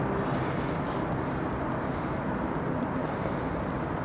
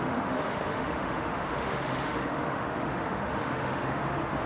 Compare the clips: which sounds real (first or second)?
first